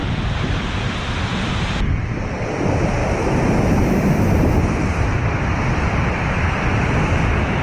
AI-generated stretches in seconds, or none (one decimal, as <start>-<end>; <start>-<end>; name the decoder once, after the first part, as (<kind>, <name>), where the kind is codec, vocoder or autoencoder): 0.0-1.4 (vocoder, BigVGAN v2); 3.0-7.0